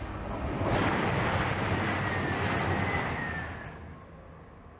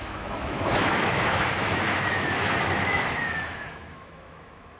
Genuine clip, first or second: first